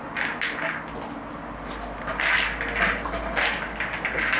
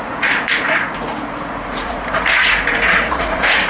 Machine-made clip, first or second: second